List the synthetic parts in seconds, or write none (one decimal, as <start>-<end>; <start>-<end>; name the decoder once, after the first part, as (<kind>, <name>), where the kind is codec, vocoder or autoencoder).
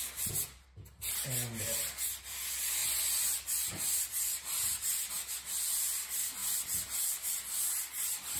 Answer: none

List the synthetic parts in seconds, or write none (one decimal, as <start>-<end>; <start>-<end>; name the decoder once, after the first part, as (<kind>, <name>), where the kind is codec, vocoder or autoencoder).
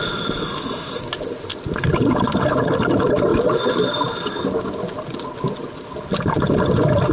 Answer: 0.0-1.5 (vocoder, BigVGAN v2); 2.1-3.3; 6.5-7.1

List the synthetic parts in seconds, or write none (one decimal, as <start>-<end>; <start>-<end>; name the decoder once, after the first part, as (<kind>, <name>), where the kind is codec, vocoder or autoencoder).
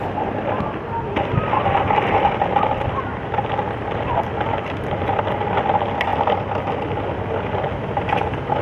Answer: none